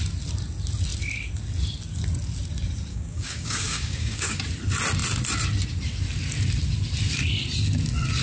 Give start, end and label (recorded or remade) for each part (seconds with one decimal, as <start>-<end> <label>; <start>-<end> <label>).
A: 0.0-2.9 recorded; 2.9-4.4 remade; 4.4-8.2 recorded